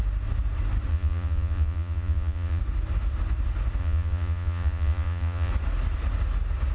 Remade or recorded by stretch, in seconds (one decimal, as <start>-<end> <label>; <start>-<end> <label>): 0.0-0.9 recorded; 0.9-2.6 remade; 2.6-3.8 recorded; 3.8-5.5 remade; 5.5-6.7 recorded